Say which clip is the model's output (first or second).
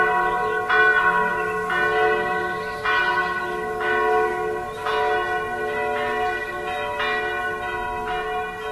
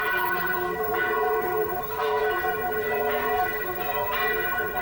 second